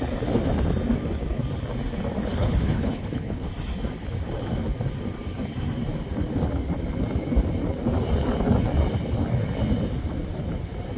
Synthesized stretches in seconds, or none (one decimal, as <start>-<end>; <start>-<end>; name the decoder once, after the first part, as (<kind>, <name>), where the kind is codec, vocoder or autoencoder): 2.3-3.5 (codec, HILCodec)